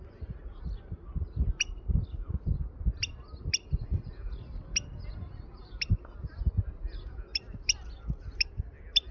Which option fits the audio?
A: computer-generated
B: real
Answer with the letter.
B